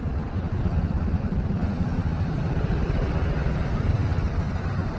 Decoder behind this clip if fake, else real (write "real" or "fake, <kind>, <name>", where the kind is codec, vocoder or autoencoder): real